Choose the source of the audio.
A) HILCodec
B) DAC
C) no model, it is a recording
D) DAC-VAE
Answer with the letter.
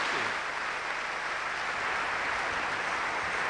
C